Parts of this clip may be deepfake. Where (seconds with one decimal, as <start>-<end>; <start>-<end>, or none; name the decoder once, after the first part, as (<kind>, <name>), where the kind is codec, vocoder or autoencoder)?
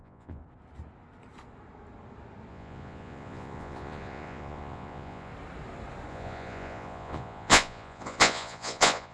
0.0-0.4 (vocoder, Vocos); 2.5-5.3; 6.1-9.1